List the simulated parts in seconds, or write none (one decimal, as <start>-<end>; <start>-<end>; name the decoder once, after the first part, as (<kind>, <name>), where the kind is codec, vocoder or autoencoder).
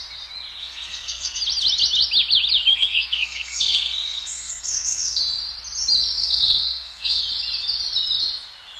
0.6-1.4 (codec, SNAC); 2.7-5.2; 6.2-7.2